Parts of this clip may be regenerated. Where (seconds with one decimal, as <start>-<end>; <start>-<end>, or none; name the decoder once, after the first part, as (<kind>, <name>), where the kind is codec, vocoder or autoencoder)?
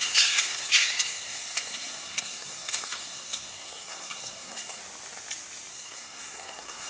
0.0-4.8 (codec, SNAC); 5.7-6.9